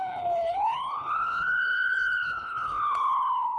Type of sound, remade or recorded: remade